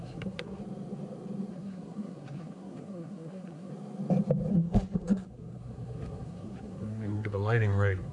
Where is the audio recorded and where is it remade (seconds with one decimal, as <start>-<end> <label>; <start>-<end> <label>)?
0.0-0.6 remade; 0.6-1.5 recorded; 1.5-3.7 remade; 3.7-4.5 recorded; 4.5-8.1 remade